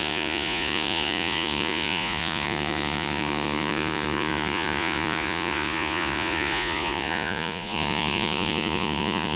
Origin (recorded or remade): remade